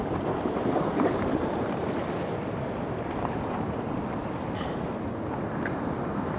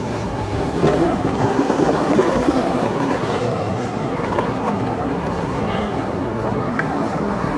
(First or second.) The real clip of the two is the first